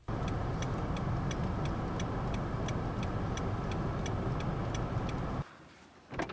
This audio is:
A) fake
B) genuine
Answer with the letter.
B